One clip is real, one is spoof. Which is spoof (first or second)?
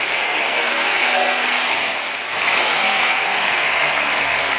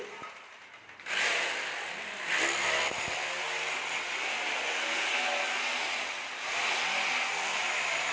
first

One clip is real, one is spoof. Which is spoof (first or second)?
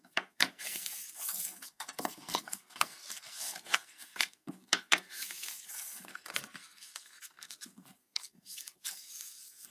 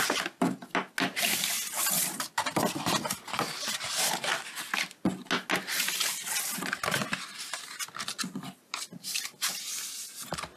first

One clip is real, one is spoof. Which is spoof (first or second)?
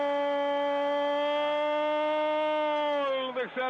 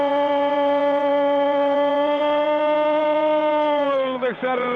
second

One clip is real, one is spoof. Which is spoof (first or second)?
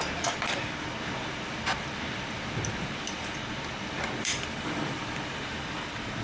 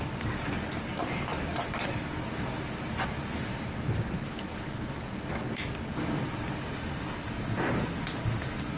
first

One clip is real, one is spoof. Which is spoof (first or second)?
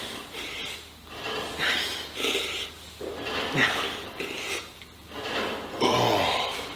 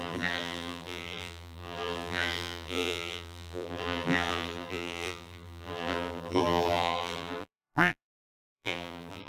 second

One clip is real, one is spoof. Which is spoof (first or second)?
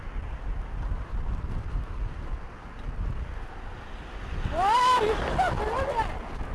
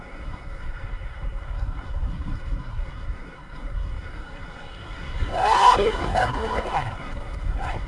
second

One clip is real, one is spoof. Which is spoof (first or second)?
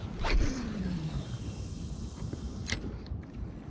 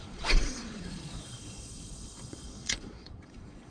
second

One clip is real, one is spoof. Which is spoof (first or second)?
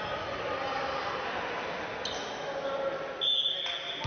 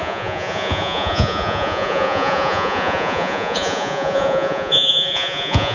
second